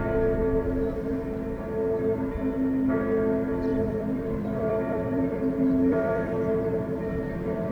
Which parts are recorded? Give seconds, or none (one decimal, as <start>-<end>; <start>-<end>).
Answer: 0.0-3.7; 6.7-7.7